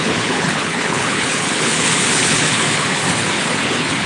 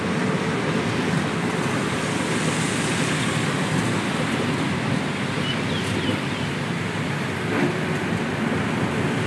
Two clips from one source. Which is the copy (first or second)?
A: first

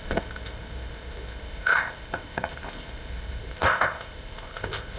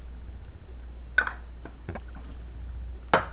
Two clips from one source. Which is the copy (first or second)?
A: first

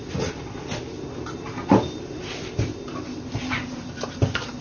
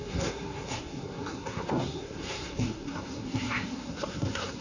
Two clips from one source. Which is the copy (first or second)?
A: second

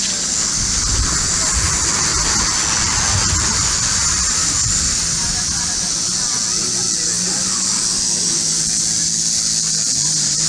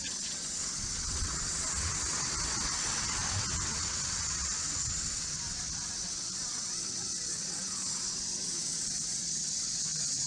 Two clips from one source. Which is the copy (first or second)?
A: second